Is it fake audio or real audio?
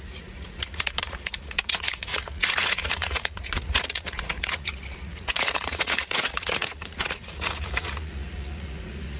fake